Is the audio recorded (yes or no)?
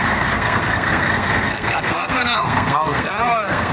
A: no